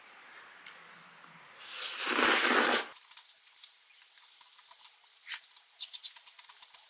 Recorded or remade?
recorded